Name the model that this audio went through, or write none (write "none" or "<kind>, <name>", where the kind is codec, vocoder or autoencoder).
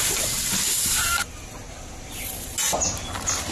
none